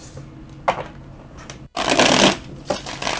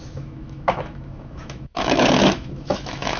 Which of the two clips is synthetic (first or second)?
second